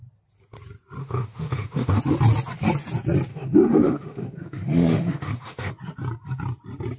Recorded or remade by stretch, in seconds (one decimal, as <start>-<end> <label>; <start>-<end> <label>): 0.0-1.0 recorded; 1.0-2.0 remade; 2.0-3.3 recorded; 3.3-5.7 remade; 5.7-7.0 recorded